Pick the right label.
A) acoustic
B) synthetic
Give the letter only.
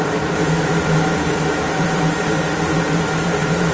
B